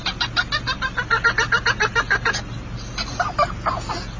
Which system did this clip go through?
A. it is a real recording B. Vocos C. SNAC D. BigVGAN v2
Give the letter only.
A